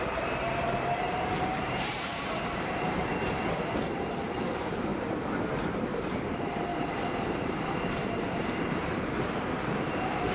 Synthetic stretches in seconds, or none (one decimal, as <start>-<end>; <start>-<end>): 0.0-4.9; 5.5-10.3